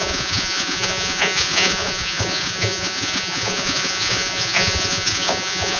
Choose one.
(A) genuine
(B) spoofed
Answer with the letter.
B